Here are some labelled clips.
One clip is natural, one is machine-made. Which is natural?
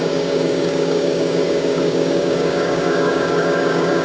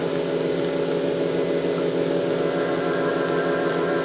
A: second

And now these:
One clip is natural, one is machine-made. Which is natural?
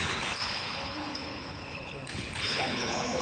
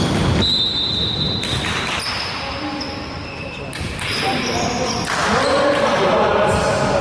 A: second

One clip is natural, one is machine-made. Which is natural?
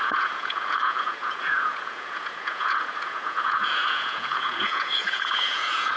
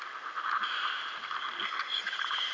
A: second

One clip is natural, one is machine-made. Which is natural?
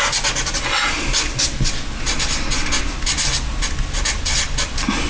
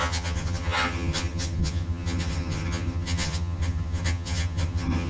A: first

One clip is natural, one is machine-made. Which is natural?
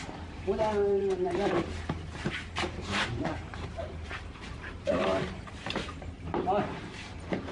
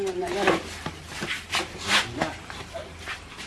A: second